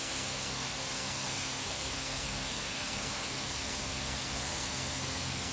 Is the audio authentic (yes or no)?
no